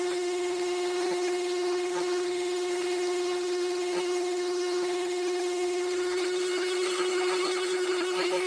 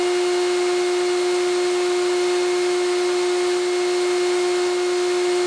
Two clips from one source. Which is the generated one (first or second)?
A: first